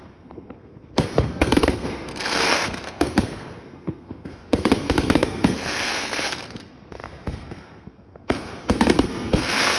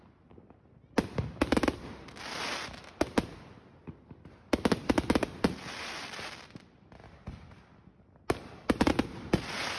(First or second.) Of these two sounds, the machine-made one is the first